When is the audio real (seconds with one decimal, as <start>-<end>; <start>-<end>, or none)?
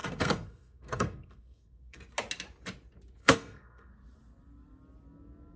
2.0-3.2; 3.9-5.6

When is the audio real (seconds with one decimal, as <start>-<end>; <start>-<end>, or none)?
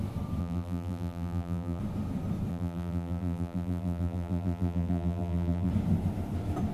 0.0-0.4; 1.8-2.5; 5.7-6.7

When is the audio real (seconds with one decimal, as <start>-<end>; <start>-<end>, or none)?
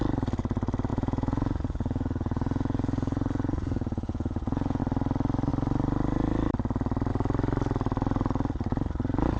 0.0-0.9; 4.8-9.4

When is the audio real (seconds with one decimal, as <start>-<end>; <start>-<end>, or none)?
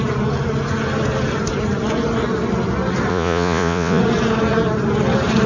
0.0-3.1; 4.0-5.5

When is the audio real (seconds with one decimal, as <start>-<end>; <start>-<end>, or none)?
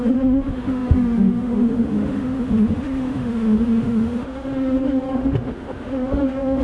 none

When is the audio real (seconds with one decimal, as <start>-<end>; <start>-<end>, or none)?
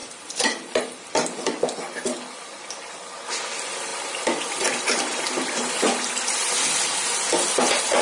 1.6-3.9; 5.3-8.0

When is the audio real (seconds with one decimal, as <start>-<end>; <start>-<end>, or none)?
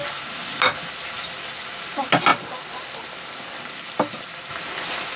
0.0-5.2